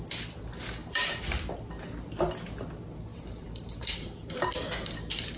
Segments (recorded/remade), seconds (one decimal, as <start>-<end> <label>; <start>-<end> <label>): 0.0-0.8 recorded; 0.8-1.5 remade; 1.5-3.1 recorded; 3.1-4.3 remade; 4.3-5.4 recorded